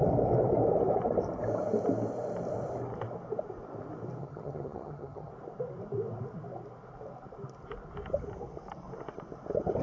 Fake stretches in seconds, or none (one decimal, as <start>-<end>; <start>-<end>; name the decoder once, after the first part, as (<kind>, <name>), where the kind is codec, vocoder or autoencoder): 4.2-5.3 (vocoder, HiFi-GAN)